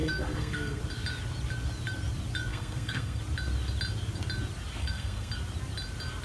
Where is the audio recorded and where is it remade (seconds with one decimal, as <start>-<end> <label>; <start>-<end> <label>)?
0.0-0.8 remade; 0.8-2.5 recorded; 2.5-3.2 remade; 3.2-4.8 recorded; 4.8-5.3 remade; 5.3-6.2 recorded